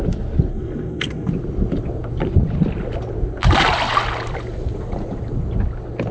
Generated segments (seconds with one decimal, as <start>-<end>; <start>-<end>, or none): 0.5-1.3